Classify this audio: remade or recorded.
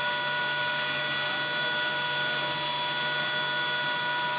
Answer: recorded